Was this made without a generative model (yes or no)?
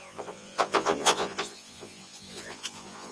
no